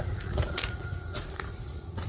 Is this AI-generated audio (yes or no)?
yes